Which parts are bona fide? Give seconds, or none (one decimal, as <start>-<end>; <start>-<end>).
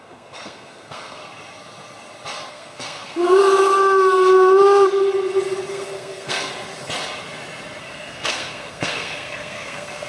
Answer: 1.2-2.5; 3.4-5.7; 6.5-7.8